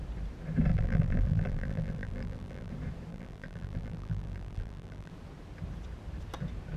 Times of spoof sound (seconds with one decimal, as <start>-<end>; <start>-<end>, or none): 0.7-2.7; 3.1-5.1